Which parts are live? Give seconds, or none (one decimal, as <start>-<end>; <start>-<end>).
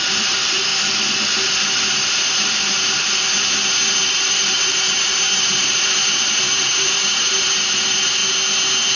0.7-2.3; 8.2-9.0